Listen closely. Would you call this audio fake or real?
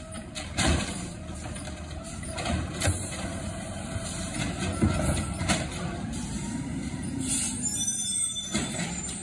fake